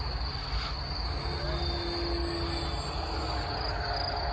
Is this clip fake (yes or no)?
no